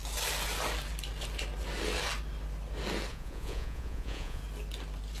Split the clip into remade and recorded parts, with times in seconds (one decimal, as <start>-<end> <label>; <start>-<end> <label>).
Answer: 0.0-3.1 recorded; 3.1-4.4 remade; 4.4-5.2 recorded